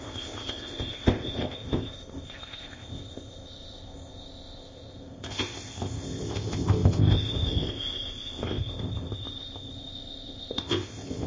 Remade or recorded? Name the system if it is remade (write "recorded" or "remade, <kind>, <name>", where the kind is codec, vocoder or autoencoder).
remade, codec, ZipCodec